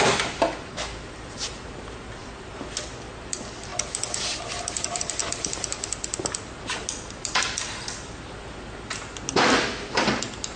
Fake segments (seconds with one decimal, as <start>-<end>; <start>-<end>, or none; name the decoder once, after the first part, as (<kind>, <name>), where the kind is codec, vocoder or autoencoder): none